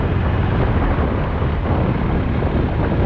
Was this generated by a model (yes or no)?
no